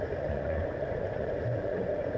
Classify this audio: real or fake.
fake